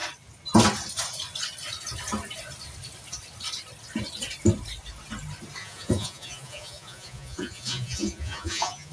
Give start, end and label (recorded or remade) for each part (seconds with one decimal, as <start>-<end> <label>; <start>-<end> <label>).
0.0-5.6 recorded; 5.6-8.9 remade